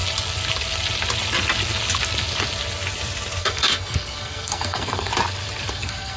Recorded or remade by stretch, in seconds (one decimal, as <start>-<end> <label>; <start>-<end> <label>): 0.0-3.4 recorded; 3.4-5.1 remade; 5.1-5.7 recorded; 5.7-6.2 remade